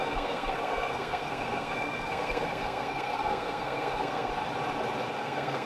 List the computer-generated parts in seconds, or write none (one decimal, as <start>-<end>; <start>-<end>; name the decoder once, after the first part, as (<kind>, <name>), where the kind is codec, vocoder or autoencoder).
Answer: 0.0-4.3 (codec, SNAC); 5.2-5.7